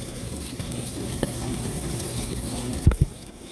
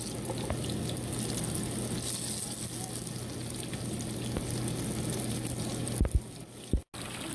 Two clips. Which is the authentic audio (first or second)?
second